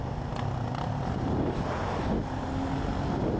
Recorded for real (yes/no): yes